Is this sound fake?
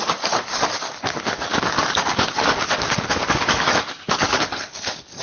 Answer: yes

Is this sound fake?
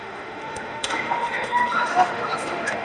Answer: yes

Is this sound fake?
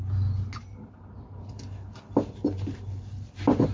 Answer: no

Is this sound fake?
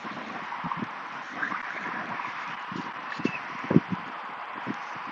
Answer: yes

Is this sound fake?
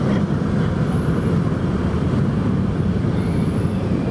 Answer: yes